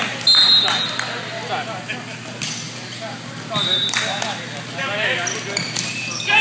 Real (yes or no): yes